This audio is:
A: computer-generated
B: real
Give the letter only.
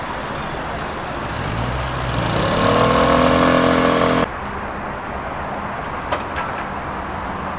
B